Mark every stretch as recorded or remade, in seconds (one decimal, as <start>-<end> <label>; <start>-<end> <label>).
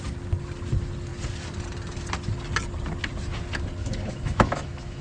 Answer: 0.0-3.8 recorded; 3.8-5.0 remade